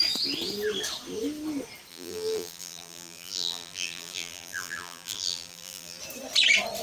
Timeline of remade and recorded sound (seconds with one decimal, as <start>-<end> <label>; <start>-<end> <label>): 0.0-1.9 recorded; 1.9-6.0 remade; 6.0-6.8 recorded